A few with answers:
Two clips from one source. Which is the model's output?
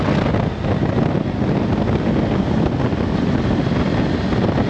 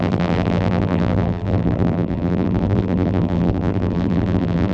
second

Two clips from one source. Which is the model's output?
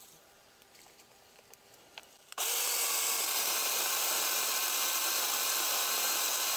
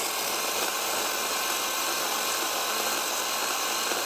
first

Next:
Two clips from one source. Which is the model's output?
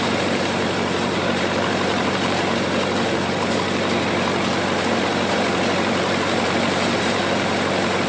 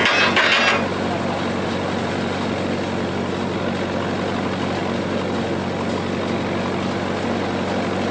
first